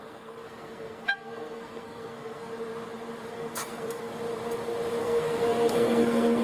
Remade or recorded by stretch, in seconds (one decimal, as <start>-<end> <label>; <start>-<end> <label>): 0.0-2.5 remade; 2.5-3.3 recorded; 3.3-4.1 remade; 4.1-5.0 recorded; 5.0-6.4 remade